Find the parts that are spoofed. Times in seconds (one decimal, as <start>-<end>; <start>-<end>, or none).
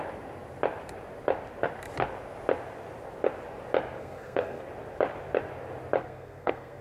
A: 4.0-4.6; 6.0-6.8